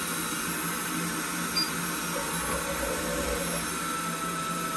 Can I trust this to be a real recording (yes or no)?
yes